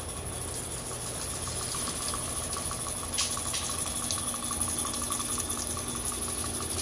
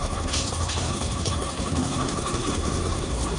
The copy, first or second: second